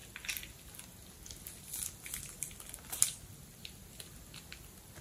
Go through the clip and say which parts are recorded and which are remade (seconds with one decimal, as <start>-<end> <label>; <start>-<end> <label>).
0.0-5.0 recorded